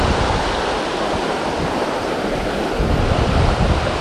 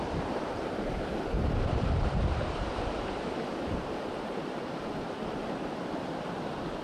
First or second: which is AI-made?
second